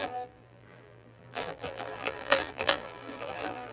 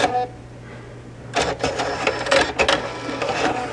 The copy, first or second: first